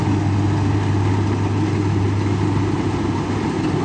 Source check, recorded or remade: recorded